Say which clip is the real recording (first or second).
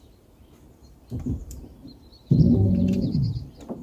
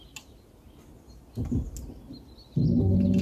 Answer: second